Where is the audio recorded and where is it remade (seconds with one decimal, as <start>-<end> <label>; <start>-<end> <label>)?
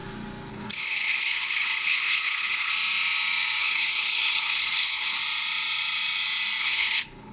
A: 0.0-0.5 recorded; 0.5-2.7 remade; 2.7-3.6 recorded; 3.6-5.2 remade; 5.2-6.6 recorded; 6.6-7.3 remade